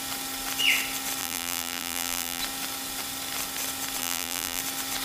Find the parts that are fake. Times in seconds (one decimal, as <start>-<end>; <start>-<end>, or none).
1.2-2.4; 4.0-4.6